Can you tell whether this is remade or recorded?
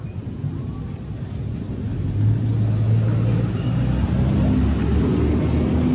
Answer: recorded